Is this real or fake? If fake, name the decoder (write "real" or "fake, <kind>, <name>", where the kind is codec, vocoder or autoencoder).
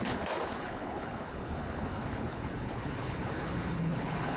fake, codec, HILCodec